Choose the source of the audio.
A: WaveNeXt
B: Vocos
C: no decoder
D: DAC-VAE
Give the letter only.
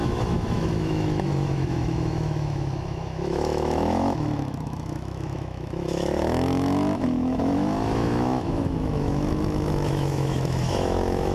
D